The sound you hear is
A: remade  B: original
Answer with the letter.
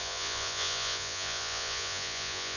A